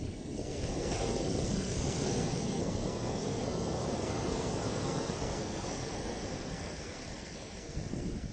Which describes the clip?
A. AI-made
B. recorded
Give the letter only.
A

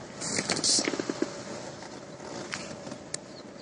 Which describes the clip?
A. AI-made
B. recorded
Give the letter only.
B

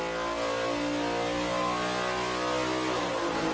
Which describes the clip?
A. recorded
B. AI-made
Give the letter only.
A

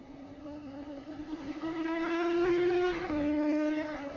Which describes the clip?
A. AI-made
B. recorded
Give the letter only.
A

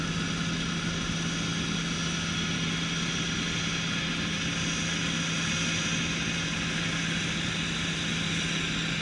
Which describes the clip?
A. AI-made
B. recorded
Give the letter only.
B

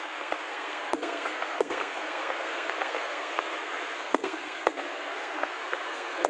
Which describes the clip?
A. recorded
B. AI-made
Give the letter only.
B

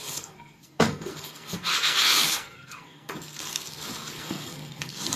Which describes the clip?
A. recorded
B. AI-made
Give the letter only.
B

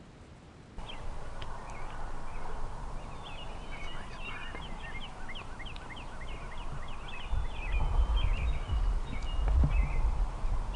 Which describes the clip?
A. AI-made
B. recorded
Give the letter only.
B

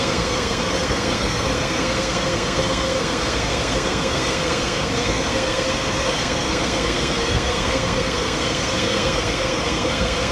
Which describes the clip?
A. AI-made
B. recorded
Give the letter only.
A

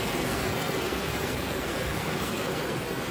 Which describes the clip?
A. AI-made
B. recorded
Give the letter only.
A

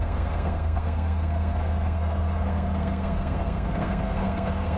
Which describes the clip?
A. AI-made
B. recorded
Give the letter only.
A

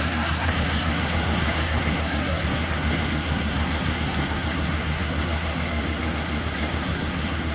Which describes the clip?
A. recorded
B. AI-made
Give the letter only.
B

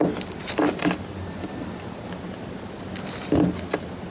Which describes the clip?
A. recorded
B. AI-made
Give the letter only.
A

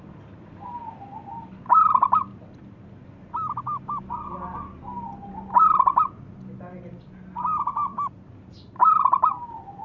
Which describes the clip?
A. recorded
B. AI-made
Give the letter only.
A